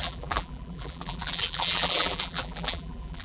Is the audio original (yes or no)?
no